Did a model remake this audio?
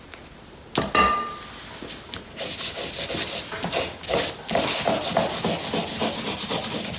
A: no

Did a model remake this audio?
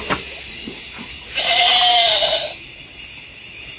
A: no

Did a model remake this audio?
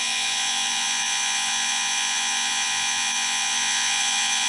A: yes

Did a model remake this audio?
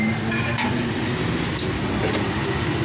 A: no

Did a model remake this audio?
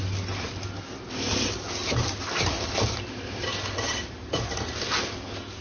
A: no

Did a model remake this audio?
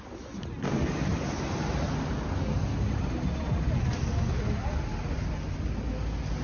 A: no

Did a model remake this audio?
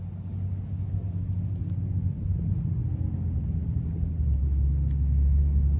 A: no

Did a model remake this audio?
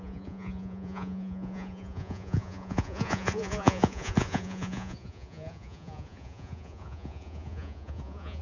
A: yes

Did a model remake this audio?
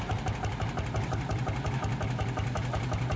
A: no